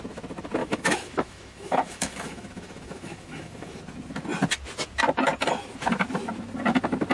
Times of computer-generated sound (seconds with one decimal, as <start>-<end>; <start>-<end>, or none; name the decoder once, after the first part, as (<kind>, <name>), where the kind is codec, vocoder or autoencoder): 0.6-3.8 (autoencoder, DAC-VAE)